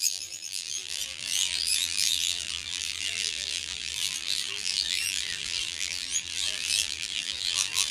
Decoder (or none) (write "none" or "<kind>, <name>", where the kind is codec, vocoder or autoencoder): vocoder, BigVGAN v2